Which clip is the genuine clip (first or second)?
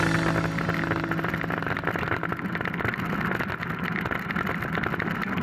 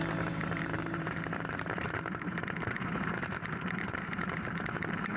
first